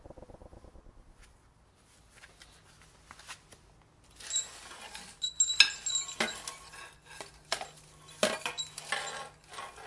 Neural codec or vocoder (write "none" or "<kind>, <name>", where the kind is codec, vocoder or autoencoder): none